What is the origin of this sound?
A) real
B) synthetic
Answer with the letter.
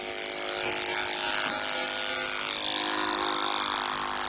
A